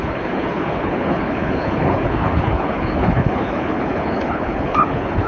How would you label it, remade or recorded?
remade